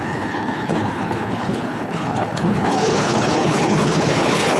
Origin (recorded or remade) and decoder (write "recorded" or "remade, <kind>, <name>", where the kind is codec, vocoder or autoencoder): remade, codec, HILCodec